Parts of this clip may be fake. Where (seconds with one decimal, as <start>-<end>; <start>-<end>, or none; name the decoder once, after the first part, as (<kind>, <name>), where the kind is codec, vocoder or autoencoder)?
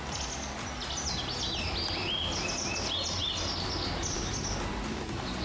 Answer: none